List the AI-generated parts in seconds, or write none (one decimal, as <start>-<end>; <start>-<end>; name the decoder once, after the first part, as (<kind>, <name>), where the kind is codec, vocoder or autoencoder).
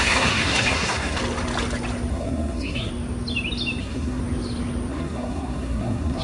0.0-1.2 (codec, SNAC); 2.1-2.9; 3.8-4.2; 4.9-6.2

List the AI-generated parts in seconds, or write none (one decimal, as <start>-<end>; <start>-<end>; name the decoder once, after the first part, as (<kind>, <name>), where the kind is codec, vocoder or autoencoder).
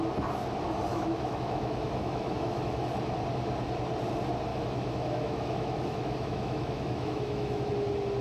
0.9-2.8 (autoencoder, DAC-VAE); 4.5-7.7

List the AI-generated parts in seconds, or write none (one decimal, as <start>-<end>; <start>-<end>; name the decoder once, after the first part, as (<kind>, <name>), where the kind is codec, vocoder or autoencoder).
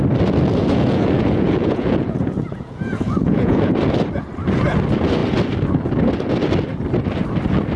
0.6-3.7 (vocoder, Vocos)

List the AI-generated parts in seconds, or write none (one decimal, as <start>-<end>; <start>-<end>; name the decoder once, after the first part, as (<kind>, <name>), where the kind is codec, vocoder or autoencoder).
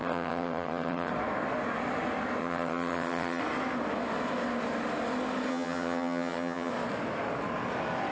0.0-1.1 (vocoder, HiFi-GAN); 2.4-3.4; 5.5-6.7